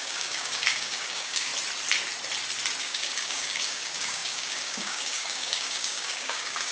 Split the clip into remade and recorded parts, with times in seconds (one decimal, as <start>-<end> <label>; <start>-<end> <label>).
0.0-1.5 remade; 1.5-2.8 recorded; 2.8-6.7 remade